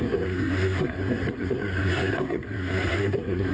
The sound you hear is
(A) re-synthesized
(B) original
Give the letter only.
A